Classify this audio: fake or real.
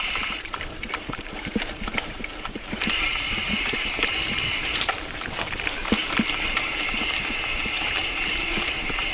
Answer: fake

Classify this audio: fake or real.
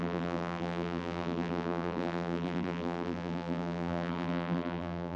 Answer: fake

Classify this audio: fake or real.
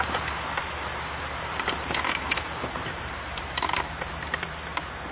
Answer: fake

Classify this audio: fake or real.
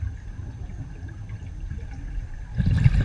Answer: real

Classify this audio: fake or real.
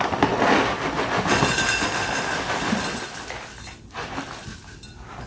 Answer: real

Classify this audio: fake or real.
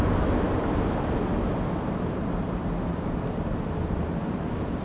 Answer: fake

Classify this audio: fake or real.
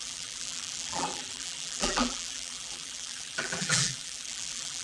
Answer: fake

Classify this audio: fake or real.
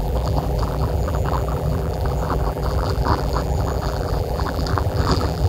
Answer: fake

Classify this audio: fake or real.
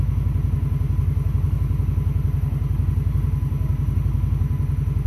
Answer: real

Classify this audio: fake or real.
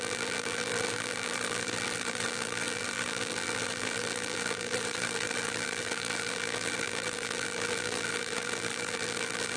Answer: fake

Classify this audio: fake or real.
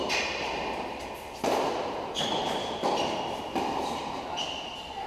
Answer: real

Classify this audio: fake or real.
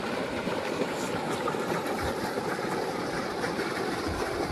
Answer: fake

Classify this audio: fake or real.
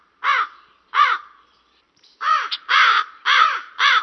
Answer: fake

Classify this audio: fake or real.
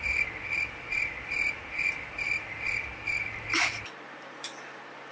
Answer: fake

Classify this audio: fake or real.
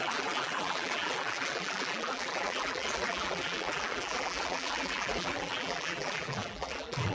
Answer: fake